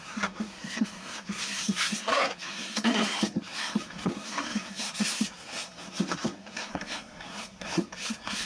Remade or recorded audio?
remade